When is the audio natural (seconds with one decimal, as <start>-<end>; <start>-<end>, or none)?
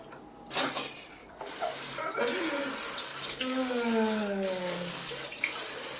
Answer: 0.0-1.2; 1.8-3.1; 5.1-6.0